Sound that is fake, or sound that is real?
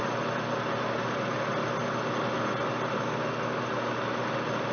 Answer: real